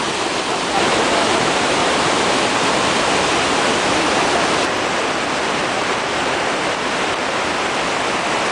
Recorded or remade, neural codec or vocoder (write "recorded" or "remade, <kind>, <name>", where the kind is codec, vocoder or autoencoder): recorded